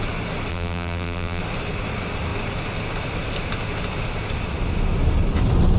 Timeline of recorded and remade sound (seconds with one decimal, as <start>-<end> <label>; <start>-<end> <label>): 0.0-0.5 recorded; 0.5-1.4 remade; 1.4-5.8 recorded